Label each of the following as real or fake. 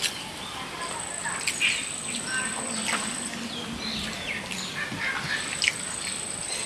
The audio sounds real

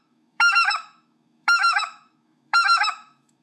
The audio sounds fake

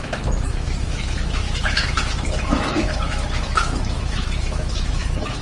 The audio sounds fake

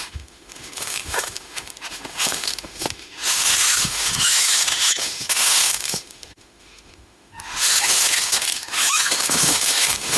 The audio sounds fake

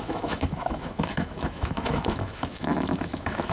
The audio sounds fake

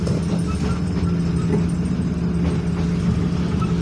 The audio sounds real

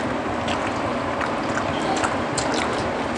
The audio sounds real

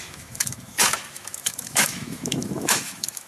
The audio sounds fake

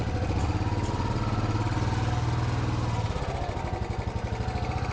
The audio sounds real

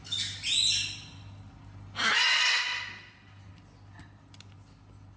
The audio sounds real